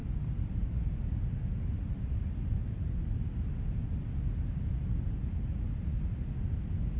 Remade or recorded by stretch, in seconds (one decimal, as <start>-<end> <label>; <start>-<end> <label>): 0.0-1.0 remade; 1.0-2.6 recorded; 2.6-3.3 remade; 3.3-7.0 recorded